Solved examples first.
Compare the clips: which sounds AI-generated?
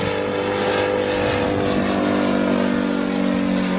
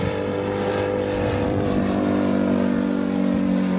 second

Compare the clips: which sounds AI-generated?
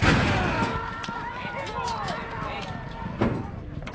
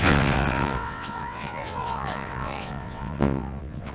second